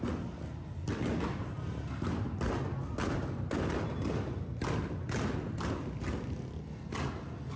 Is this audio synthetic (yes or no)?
no